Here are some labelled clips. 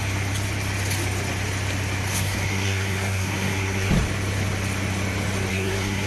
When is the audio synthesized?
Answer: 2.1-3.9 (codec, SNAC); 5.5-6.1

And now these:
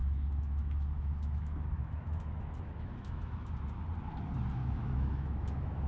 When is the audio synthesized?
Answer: 0.0-3.5 (autoencoder, DAC-VAE); 4.6-5.9

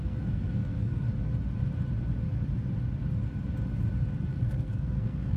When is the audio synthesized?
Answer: 0.0-1.1 (codec, SNAC); 4.3-5.4

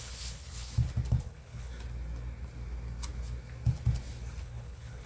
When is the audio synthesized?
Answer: 0.0-0.7 (codec, HILCodec); 1.2-1.7; 4.4-5.1

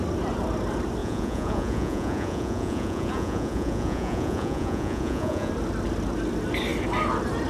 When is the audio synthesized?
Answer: 1.0-5.5 (vocoder, Vocos)

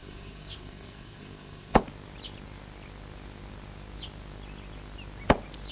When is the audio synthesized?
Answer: 0.0-1.8 (codec, SNAC)

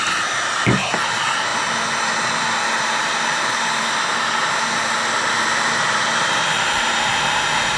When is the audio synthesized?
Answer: none